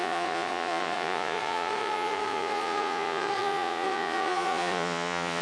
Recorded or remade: remade